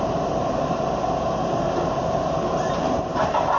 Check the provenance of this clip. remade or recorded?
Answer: remade